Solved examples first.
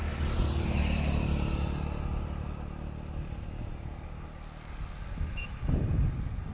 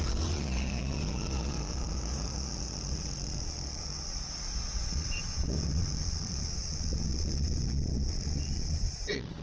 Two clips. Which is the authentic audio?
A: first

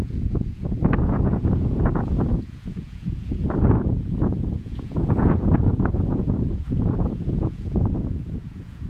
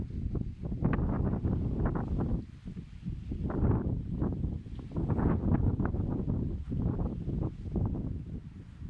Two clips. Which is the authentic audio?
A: second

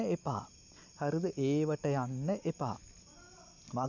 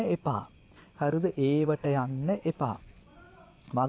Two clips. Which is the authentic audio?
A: first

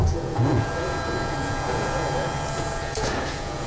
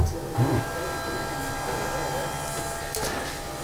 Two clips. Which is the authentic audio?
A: second